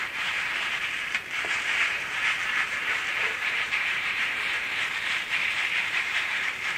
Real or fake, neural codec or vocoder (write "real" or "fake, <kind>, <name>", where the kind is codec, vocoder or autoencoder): fake, vocoder, BigVGAN v2